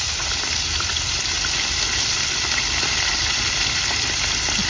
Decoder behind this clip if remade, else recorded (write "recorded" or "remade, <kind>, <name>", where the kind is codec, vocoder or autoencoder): remade, vocoder, BigVGAN v2